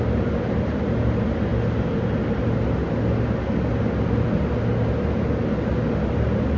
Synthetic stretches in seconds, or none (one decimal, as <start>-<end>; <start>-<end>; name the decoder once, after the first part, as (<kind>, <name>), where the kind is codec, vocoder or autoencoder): none